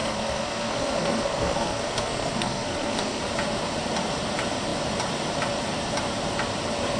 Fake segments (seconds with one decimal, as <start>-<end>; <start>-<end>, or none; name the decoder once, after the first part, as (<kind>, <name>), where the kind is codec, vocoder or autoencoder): 0.0-3.2 (codec, SNAC)